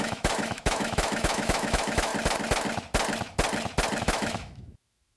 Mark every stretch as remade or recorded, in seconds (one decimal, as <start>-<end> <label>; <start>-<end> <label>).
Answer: 0.0-2.1 remade; 2.1-4.0 recorded; 4.0-5.2 remade